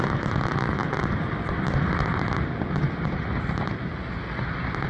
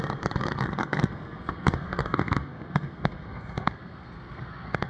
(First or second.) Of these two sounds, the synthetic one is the second